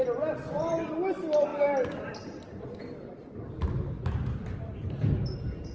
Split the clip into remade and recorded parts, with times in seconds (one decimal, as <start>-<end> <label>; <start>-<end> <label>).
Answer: 0.0-1.5 recorded; 1.5-4.9 remade; 4.9-5.7 recorded